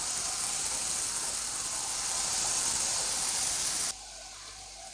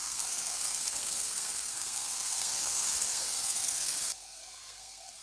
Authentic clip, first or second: first